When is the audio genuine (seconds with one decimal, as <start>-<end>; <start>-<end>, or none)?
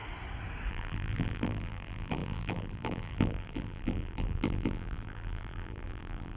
0.0-0.7